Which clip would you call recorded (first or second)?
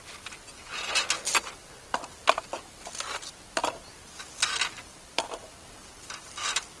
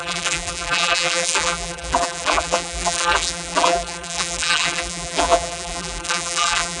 first